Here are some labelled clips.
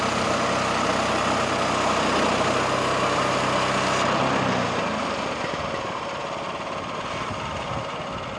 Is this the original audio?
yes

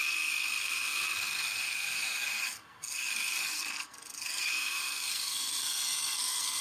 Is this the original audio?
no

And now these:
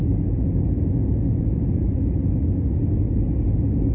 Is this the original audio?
yes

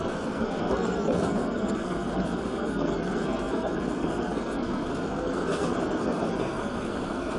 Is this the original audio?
no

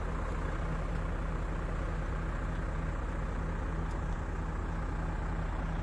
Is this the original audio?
yes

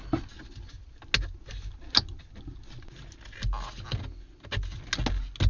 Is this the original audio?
yes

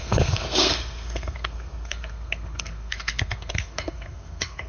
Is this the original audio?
no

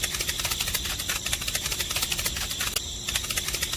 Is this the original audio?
yes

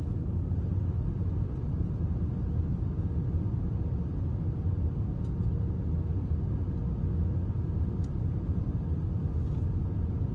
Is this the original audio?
yes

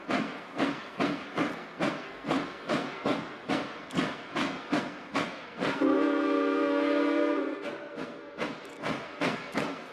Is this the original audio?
no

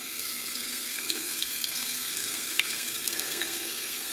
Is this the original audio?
no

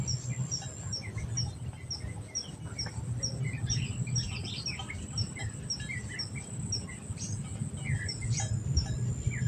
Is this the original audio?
yes